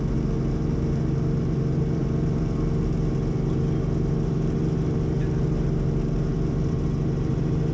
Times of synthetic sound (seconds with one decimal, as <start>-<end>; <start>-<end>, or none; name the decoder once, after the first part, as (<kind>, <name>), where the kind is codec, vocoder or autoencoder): none